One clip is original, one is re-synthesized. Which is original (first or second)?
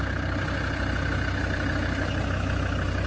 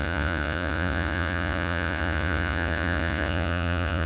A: first